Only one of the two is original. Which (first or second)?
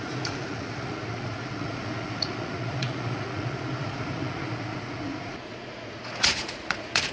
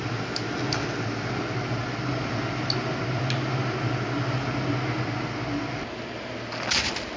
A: second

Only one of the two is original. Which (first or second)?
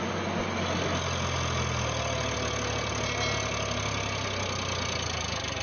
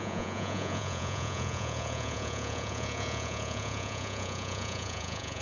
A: first